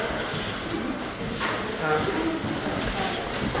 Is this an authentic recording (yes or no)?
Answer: yes